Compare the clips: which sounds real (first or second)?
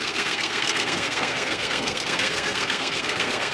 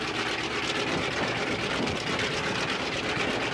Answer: second